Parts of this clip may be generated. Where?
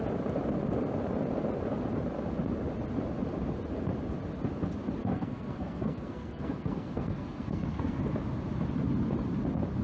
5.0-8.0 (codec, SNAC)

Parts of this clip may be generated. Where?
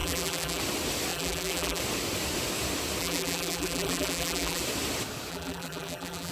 0.0-0.6 (vocoder, BigVGAN v2); 1.1-1.8; 3.0-4.6; 5.3-6.3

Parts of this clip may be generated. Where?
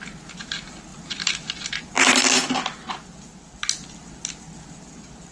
none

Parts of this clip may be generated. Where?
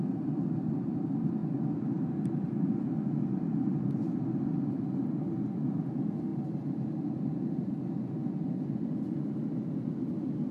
6.3-7.8 (vocoder, BigVGAN v2)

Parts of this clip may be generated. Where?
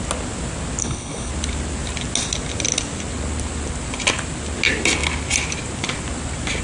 0.8-1.3 (codec, HILCodec)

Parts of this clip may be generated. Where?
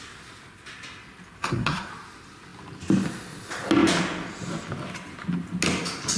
1.4-1.9 (codec, SNAC)